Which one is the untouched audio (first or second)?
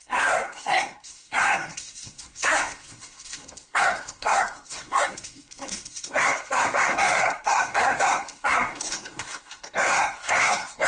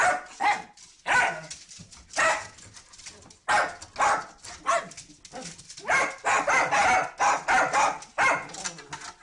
second